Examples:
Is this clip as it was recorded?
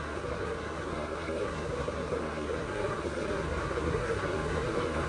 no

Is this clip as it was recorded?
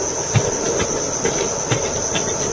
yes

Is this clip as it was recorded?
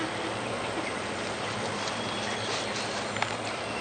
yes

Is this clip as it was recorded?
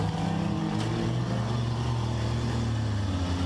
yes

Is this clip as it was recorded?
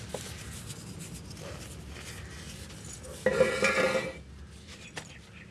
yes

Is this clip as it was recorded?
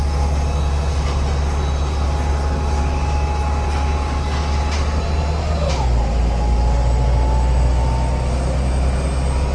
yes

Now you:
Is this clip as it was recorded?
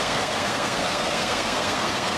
no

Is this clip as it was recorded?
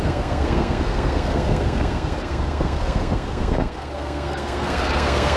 no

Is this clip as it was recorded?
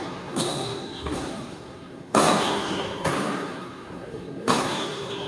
no